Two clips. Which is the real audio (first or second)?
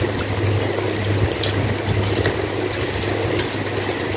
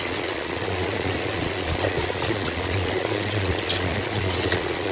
first